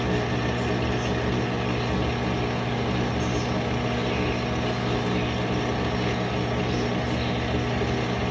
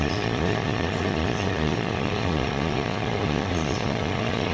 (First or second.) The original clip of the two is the first